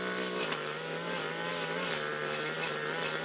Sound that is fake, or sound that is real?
real